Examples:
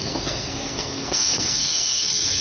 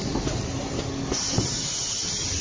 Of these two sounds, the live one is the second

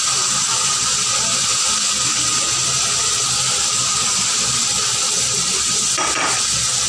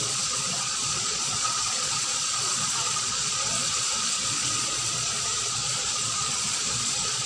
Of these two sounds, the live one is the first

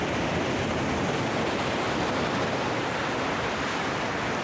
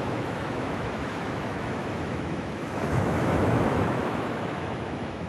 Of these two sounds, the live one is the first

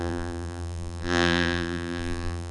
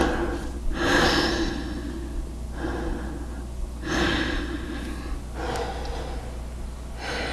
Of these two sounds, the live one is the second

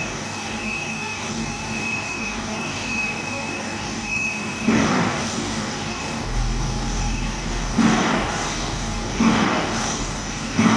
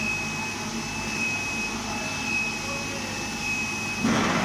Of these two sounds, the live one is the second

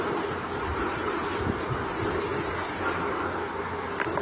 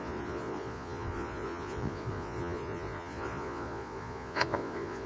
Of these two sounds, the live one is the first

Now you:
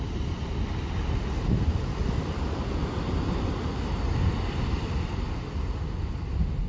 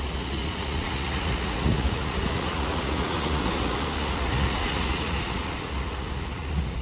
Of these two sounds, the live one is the first